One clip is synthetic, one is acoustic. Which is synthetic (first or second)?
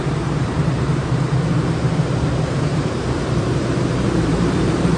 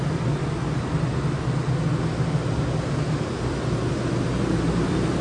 first